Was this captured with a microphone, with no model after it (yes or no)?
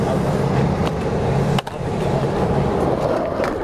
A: no